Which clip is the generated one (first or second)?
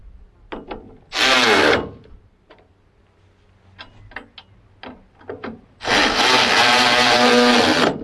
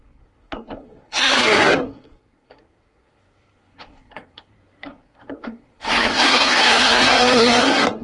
second